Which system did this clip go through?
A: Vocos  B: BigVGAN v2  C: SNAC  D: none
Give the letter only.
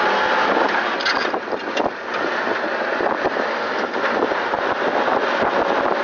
D